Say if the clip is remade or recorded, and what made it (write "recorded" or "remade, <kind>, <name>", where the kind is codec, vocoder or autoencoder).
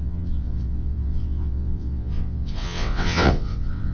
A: remade, vocoder, WaveNeXt